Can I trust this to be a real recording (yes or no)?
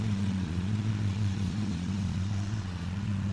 no